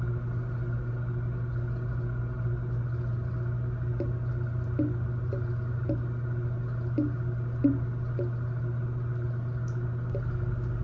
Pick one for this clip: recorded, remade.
recorded